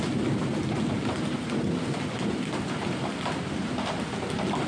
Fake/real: real